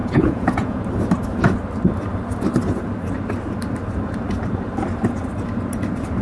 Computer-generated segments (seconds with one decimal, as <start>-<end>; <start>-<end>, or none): 0.0-0.8